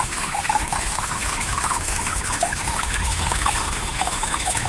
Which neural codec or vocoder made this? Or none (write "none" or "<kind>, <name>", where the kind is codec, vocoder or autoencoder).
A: autoencoder, DAC-VAE